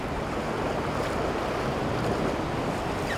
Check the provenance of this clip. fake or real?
real